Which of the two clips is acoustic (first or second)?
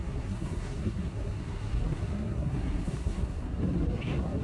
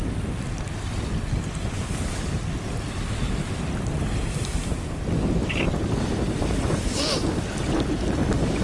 second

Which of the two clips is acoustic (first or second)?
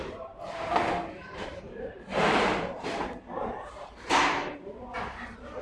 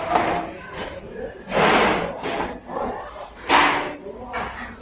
second